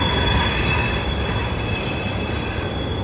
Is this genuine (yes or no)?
yes